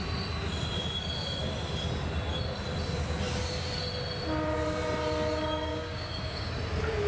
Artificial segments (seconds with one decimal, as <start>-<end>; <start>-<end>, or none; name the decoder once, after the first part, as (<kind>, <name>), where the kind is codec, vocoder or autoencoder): 5.7-6.5 (codec, DAC)